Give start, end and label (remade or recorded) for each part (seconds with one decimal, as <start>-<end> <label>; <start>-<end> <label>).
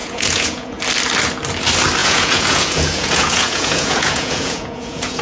0.0-0.8 remade; 0.8-2.0 recorded; 2.0-5.2 remade